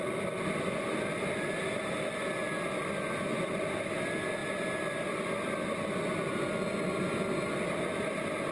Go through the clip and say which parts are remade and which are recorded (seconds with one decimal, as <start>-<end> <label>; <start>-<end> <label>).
0.0-8.5 recorded

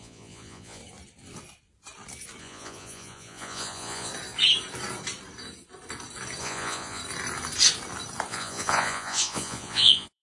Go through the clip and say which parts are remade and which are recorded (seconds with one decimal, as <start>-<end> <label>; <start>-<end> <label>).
0.0-0.8 remade; 0.8-2.4 recorded; 2.4-4.1 remade; 4.1-6.4 recorded; 6.4-7.0 remade; 7.0-8.3 recorded; 8.3-10.2 remade

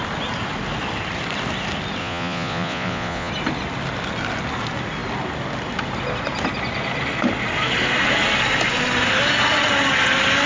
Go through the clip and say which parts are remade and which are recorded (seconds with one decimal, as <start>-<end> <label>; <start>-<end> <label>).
0.0-2.0 recorded; 2.0-3.3 remade; 3.3-10.5 recorded

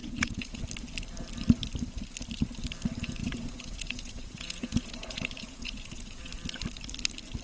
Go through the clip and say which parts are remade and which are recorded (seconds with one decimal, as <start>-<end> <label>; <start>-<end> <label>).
0.0-0.6 remade; 0.6-3.2 recorded; 3.2-6.3 remade; 6.3-7.4 recorded

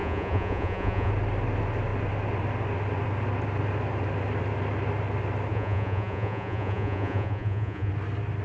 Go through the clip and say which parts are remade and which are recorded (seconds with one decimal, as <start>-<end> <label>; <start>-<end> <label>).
0.0-1.1 remade; 1.1-5.5 recorded; 5.5-7.9 remade; 7.9-8.4 recorded

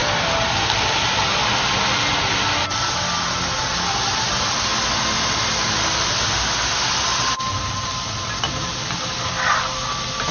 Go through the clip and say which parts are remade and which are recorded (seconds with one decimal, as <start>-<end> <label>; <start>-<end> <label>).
0.0-10.3 recorded

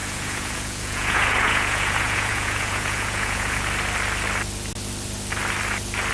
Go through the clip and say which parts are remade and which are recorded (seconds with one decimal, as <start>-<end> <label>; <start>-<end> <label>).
0.0-3.6 remade; 3.6-6.1 recorded

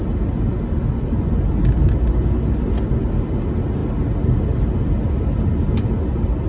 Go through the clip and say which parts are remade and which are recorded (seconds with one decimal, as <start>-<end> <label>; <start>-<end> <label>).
0.0-6.5 recorded